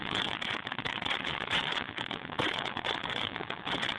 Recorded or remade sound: remade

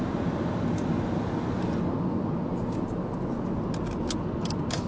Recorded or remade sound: recorded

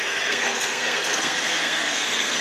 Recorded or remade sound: remade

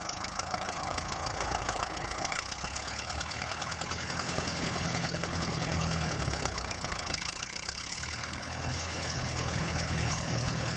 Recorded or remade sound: remade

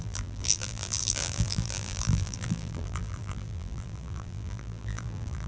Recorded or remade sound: remade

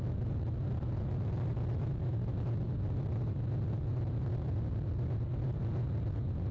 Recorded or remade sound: recorded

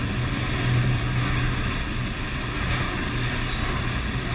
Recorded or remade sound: recorded